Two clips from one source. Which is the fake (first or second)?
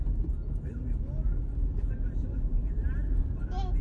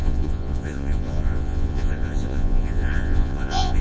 second